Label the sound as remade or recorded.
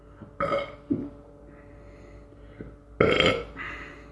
recorded